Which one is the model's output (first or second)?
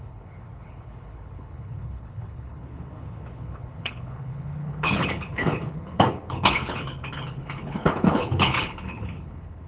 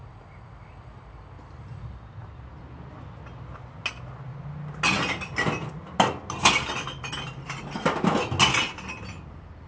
first